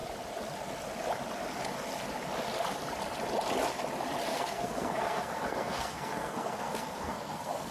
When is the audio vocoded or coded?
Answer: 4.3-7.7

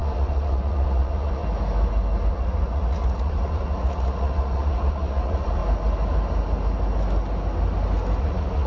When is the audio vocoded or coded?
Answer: 0.0-1.4; 2.3-5.6; 8.2-8.7

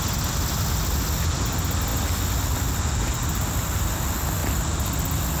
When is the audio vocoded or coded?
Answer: 1.9-3.9

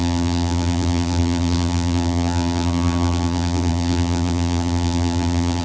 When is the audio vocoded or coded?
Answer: 0.0-5.6

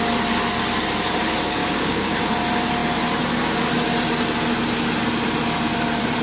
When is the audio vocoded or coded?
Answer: 1.6-2.2

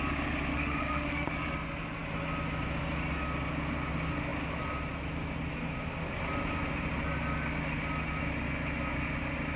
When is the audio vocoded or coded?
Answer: 0.5-1.3

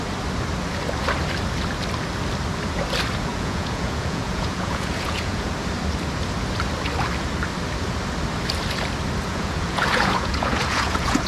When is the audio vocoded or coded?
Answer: 3.3-5.5; 9.3-11.3

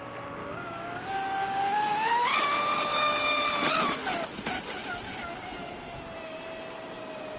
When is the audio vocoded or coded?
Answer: 0.4-2.1; 2.9-3.5